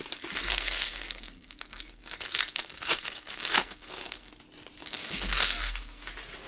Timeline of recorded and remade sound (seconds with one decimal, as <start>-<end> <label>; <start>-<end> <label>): 0.0-0.4 recorded; 0.4-4.3 remade; 4.3-4.8 recorded; 4.8-6.1 remade; 6.1-6.5 recorded